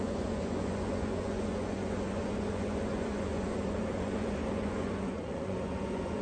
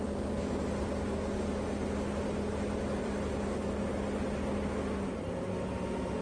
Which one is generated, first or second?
first